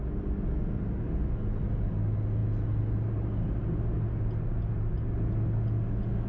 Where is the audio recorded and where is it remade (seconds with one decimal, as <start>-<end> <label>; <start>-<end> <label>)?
0.0-6.3 recorded